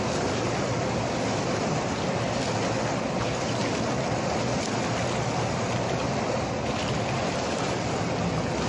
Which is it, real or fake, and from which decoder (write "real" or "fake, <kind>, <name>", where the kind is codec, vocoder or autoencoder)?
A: real